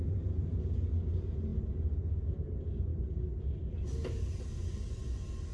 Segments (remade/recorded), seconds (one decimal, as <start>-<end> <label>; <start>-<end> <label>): 0.0-5.5 recorded